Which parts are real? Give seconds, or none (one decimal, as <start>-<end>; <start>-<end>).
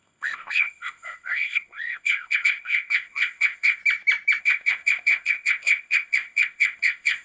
3.8-4.4